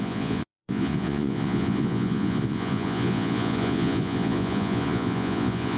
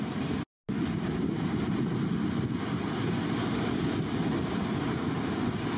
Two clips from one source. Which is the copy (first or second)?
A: first